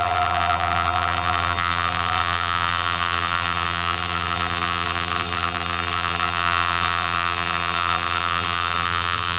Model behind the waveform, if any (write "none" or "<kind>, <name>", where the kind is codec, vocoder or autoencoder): vocoder, BigVGAN v2